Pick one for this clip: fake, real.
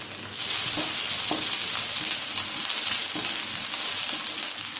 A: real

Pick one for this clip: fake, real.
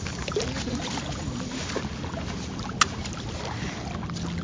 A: real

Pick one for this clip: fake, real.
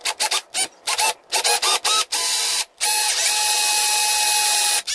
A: real